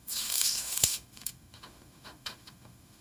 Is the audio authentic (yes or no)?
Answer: no